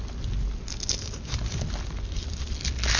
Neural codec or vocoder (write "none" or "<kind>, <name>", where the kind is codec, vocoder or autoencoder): none